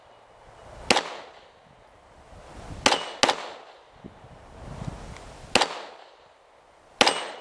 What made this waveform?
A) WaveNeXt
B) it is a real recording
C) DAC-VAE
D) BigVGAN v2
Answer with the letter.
B